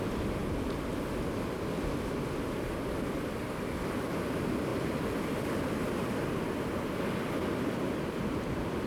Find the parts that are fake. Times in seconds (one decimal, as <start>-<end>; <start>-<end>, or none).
none